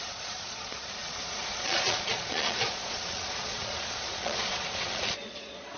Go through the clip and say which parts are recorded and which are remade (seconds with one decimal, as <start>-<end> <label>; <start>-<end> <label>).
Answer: 0.0-5.8 remade